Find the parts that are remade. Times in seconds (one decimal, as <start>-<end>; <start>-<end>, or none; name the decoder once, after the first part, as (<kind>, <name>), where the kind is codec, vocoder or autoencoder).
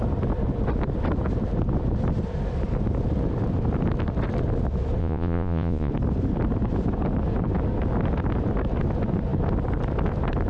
5.0-5.9 (vocoder, Vocos)